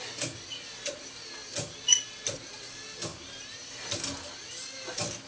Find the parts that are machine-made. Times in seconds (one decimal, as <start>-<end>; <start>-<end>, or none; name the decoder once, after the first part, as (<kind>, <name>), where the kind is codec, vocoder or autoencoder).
3.1-4.0 (vocoder, BigVGAN v2)